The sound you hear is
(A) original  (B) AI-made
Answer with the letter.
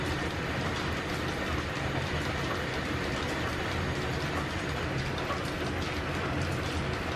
A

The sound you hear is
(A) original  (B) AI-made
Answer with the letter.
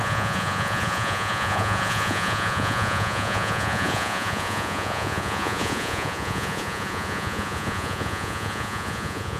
B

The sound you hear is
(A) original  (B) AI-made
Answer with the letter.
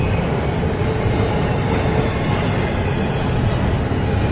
A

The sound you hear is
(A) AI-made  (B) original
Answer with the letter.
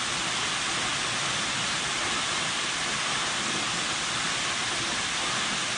B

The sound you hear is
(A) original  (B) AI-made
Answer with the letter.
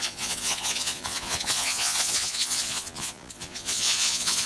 B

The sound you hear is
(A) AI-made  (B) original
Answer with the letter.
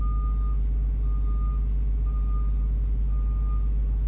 B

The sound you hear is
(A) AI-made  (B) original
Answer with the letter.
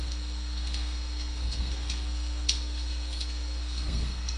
A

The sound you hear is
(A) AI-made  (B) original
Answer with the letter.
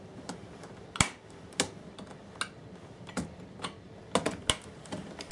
B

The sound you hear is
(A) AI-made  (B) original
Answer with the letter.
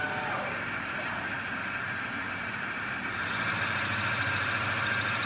B